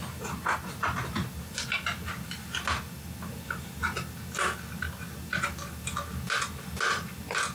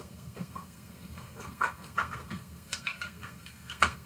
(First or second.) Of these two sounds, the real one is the first